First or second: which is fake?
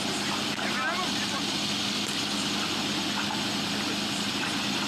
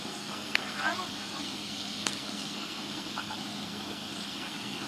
second